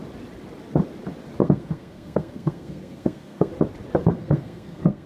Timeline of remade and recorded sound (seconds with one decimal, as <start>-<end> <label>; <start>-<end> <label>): 0.0-1.4 recorded; 1.4-3.5 remade; 3.5-4.0 recorded; 4.0-5.1 remade